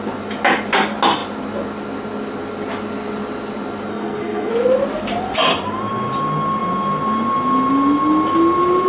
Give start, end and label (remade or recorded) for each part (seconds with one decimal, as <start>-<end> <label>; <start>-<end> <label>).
0.0-3.9 recorded; 3.9-4.5 remade; 4.5-8.9 recorded